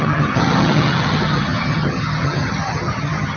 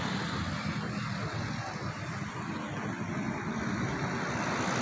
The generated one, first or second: first